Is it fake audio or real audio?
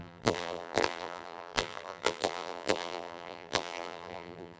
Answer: fake